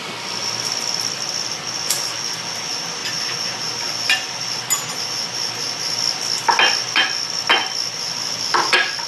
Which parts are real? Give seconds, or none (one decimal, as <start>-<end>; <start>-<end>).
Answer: 0.0-9.1